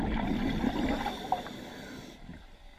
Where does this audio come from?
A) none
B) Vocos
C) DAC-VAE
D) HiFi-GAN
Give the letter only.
A